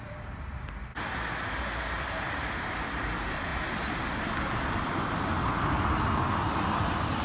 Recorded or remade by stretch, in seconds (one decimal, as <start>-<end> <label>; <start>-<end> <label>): 0.0-0.9 remade; 0.9-1.9 recorded; 1.9-3.5 remade; 3.5-4.7 recorded; 4.7-7.2 remade